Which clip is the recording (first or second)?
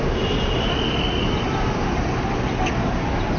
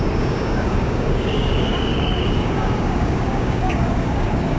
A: first